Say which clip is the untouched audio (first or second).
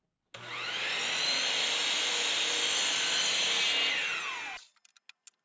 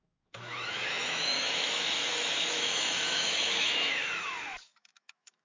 first